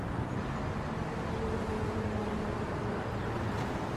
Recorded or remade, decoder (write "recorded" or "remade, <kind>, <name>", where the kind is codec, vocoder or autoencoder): recorded